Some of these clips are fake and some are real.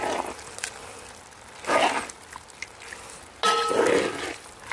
real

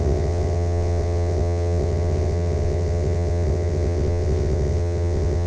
fake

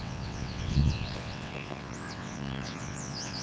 fake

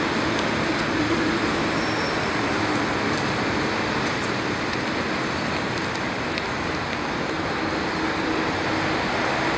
real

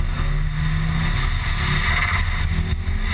real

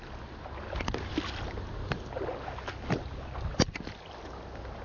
real